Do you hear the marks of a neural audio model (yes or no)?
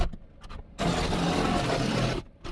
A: no